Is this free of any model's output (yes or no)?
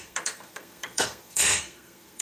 no